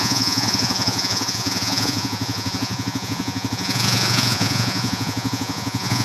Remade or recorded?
remade